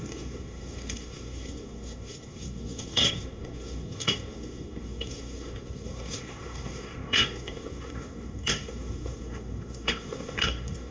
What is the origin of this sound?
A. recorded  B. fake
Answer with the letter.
B